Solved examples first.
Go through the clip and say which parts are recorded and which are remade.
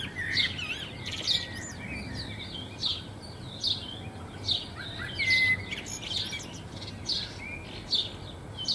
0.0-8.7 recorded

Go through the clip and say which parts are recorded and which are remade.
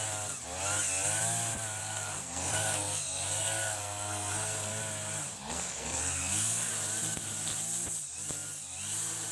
0.0-1.8 recorded; 1.8-4.8 remade; 4.8-5.5 recorded; 5.5-6.7 remade; 6.7-9.3 recorded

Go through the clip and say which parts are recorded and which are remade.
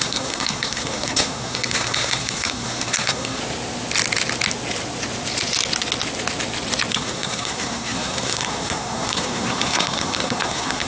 0.0-3.4 remade; 3.4-6.9 recorded; 6.9-10.9 remade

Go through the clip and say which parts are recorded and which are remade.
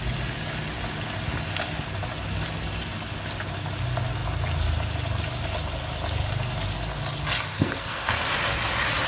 0.0-7.5 recorded; 7.5-8.3 remade; 8.3-9.1 recorded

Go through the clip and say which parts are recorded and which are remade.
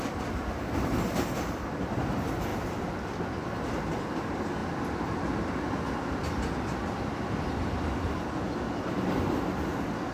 0.0-10.1 recorded